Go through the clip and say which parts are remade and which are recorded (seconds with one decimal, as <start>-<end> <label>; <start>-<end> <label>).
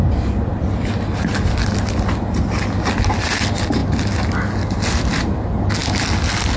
0.0-6.6 recorded